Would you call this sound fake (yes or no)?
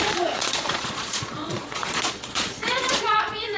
yes